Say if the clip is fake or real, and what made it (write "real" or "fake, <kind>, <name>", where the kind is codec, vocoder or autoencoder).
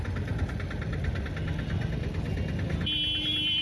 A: real